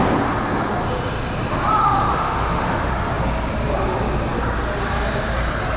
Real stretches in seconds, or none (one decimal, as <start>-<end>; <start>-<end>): 0.0-1.8; 2.9-5.8